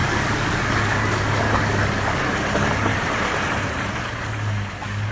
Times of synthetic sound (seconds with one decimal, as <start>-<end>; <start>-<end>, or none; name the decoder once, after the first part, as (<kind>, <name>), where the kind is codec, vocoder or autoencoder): 0.0-2.9 (codec, DAC); 3.9-5.1